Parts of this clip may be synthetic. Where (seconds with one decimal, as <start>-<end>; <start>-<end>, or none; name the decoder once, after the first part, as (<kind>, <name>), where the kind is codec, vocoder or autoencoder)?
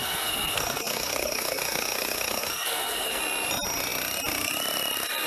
0.0-3.2 (codec, SNAC)